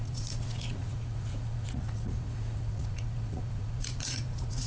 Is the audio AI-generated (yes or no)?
yes